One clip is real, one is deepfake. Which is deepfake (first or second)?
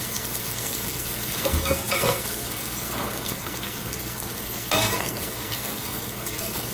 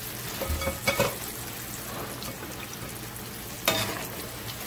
first